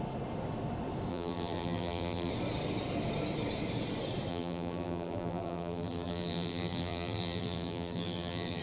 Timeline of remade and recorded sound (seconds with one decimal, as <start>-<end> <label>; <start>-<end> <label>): 0.0-1.1 recorded; 1.1-2.3 remade; 2.3-4.3 recorded; 4.3-8.6 remade